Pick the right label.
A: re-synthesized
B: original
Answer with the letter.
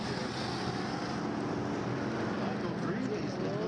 B